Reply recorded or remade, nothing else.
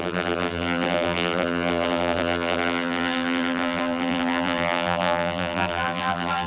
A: remade